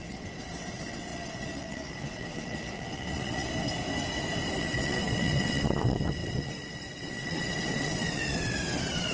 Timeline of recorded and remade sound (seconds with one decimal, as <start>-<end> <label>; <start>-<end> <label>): 0.0-3.5 remade; 3.5-4.6 recorded; 4.6-9.1 remade

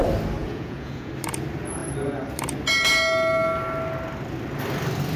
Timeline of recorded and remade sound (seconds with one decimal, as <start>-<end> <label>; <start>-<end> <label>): 0.0-0.4 recorded; 0.4-1.1 remade; 1.1-5.2 recorded

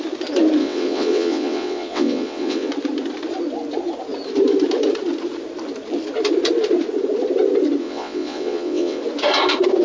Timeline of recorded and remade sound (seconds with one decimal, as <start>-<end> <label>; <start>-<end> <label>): 0.0-0.6 recorded; 0.6-2.7 remade; 2.7-7.8 recorded; 7.8-9.0 remade; 9.0-9.8 recorded